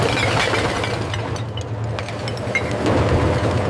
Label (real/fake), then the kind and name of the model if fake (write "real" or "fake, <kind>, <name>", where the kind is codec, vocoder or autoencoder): real